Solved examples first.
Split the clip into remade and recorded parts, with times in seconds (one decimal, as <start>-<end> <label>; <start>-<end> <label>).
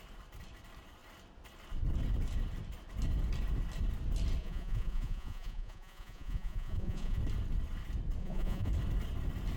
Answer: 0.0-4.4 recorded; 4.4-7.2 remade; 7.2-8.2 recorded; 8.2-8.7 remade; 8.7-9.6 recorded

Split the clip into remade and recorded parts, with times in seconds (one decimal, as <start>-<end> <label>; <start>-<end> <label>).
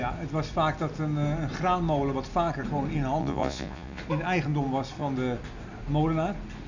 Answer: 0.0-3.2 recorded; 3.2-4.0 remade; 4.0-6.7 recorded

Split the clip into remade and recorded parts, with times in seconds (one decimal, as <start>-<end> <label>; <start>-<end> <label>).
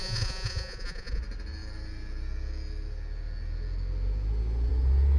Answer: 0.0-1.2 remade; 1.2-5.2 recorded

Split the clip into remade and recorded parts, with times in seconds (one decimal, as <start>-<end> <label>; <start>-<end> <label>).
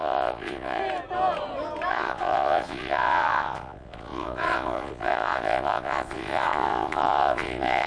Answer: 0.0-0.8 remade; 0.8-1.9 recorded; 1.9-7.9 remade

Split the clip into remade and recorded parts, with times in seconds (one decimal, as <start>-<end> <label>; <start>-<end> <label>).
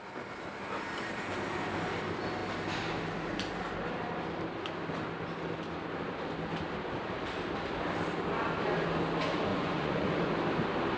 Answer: 0.0-9.5 recorded; 9.5-10.3 remade; 10.3-11.0 recorded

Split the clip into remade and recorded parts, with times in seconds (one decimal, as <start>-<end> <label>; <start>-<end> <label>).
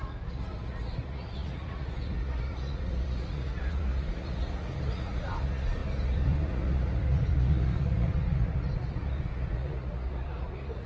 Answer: 0.0-10.9 remade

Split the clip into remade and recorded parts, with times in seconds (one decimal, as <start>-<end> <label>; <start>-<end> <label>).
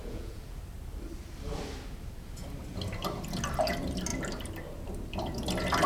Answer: 0.0-0.6 remade; 0.6-5.9 recorded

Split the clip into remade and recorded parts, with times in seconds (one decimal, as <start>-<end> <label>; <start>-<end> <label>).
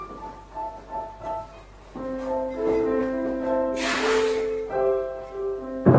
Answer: 0.0-6.0 recorded